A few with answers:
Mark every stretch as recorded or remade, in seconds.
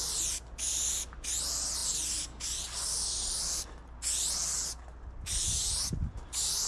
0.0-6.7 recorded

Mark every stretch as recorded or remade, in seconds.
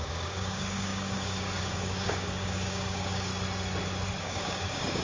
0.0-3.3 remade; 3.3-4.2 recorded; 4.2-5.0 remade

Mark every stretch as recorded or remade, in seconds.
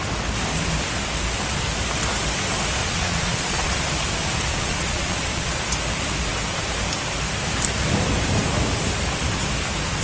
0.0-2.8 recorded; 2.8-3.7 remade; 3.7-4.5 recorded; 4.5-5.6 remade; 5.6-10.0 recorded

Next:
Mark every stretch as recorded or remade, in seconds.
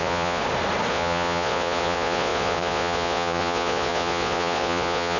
0.0-0.4 remade; 0.4-0.9 recorded; 0.9-5.2 remade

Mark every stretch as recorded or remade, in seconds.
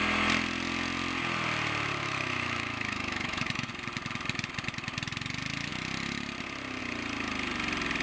0.0-2.0 recorded; 2.0-3.7 remade; 3.7-8.0 recorded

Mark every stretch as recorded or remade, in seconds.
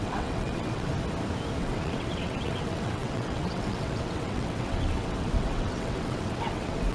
0.0-0.9 remade; 0.9-1.6 recorded; 1.6-6.9 remade